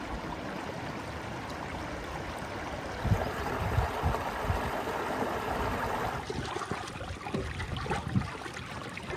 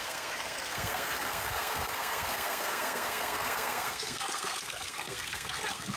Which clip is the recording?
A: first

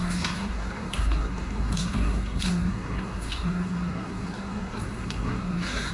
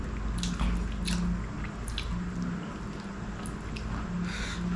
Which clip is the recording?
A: second